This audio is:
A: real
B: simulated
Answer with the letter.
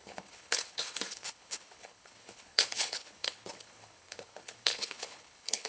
B